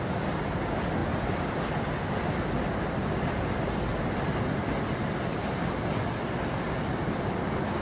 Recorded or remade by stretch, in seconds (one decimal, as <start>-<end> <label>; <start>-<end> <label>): 0.0-7.8 recorded